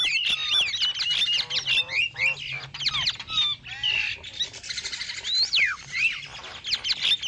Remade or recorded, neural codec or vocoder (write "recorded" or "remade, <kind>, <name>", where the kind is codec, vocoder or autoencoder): recorded